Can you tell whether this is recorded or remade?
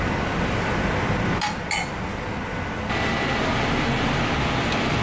recorded